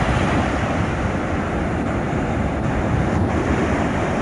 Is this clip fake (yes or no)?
no